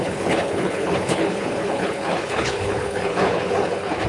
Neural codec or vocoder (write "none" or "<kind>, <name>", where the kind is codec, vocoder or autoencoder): codec, HILCodec